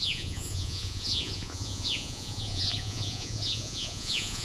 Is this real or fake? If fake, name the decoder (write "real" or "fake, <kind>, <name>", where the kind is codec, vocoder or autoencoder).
fake, vocoder, Vocos